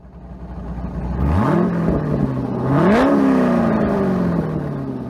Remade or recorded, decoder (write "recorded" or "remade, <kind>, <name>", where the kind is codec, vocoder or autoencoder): recorded